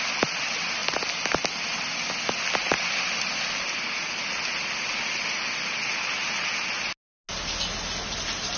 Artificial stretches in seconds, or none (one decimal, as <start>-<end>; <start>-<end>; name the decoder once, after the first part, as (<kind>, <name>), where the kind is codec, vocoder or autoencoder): none